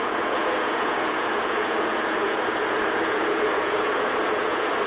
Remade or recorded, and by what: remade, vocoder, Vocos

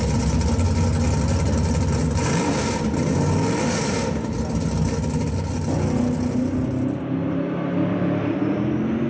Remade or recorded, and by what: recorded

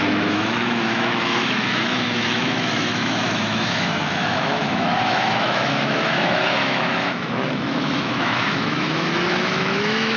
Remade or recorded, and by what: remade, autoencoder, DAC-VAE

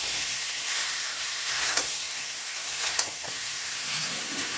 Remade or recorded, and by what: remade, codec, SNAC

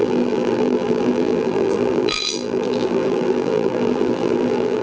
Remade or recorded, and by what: remade, vocoder, BigVGAN v2